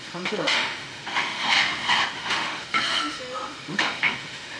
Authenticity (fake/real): fake